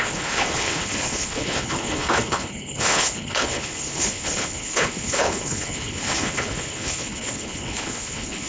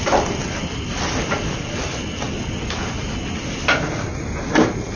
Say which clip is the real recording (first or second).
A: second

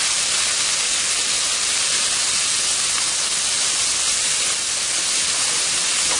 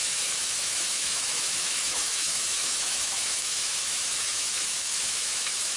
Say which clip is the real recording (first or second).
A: first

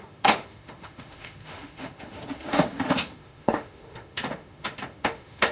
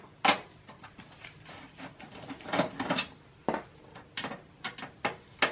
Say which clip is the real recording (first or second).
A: second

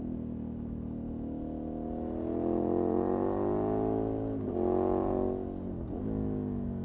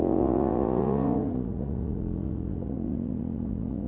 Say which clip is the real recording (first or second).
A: first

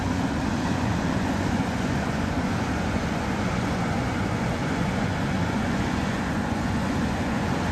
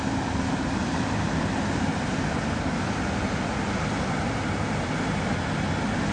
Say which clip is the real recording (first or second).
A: second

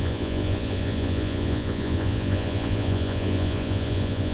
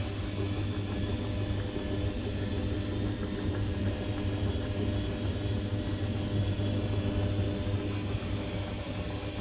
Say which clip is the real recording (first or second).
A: second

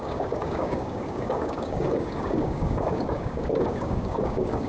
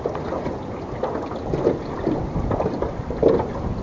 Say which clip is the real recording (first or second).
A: second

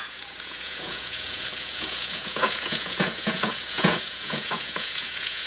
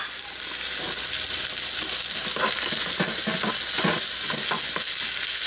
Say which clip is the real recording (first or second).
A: second